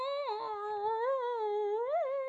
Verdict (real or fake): real